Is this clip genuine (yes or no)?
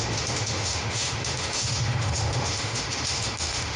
no